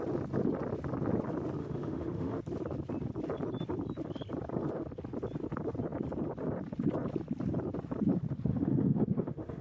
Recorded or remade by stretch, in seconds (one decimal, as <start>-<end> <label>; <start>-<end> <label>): 0.0-1.6 recorded; 1.6-2.4 remade; 2.4-8.5 recorded; 8.5-9.6 remade